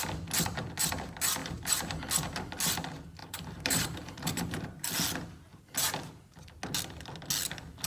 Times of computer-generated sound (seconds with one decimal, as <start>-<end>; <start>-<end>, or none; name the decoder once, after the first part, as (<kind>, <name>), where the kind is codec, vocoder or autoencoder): 1.4-2.0 (vocoder, BigVGAN v2); 3.2-4.9